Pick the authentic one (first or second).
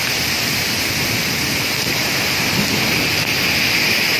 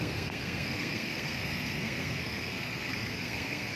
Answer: first